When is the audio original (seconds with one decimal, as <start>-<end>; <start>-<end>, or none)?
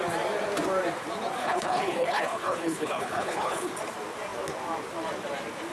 0.0-1.4; 3.7-5.7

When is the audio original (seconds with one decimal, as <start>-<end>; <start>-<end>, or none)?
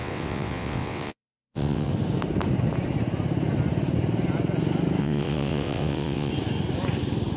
1.9-5.0; 6.3-7.4